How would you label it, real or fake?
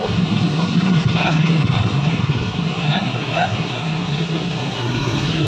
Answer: fake